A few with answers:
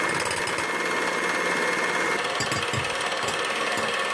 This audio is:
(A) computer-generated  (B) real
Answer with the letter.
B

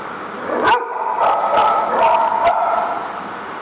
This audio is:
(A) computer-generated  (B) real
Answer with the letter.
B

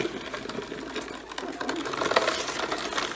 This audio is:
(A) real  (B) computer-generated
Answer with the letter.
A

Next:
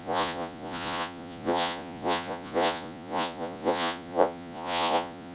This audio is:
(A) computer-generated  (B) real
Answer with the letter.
A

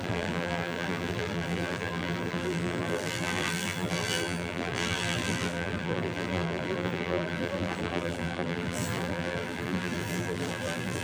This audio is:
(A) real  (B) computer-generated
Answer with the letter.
B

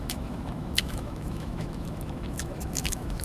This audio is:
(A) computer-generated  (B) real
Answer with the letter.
A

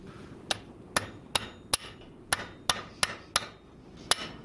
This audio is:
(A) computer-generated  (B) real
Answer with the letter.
B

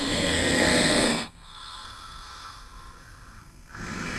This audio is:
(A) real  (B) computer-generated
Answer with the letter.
B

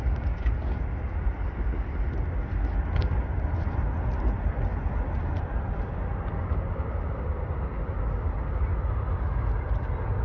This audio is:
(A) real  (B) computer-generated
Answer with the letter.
A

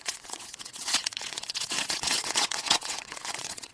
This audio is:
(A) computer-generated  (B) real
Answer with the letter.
A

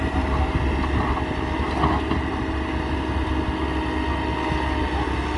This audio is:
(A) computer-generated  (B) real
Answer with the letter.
B